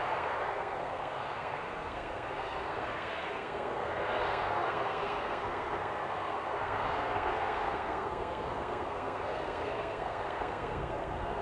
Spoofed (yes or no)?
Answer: yes